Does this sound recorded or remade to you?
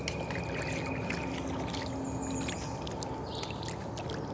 recorded